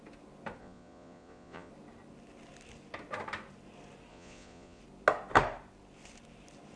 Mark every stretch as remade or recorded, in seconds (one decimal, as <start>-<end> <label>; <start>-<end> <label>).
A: 0.0-0.6 recorded; 0.6-1.7 remade; 1.7-4.1 recorded; 4.1-4.8 remade; 4.8-6.8 recorded